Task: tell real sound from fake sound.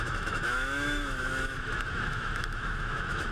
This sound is fake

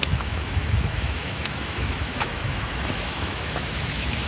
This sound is fake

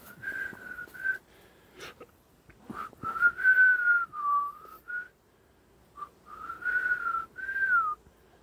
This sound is real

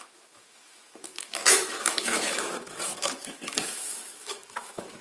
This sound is fake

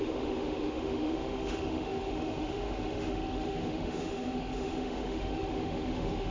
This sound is fake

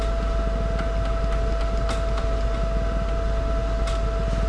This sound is real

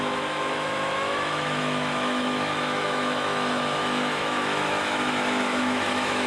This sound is fake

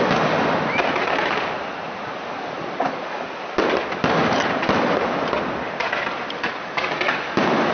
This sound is real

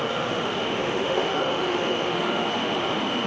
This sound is fake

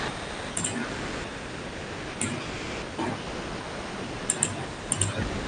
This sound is real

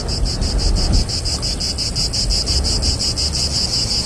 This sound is real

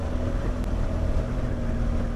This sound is real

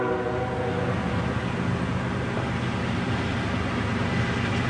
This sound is real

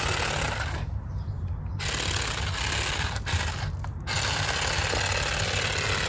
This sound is real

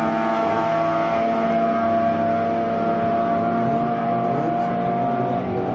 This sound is real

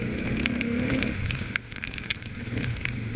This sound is fake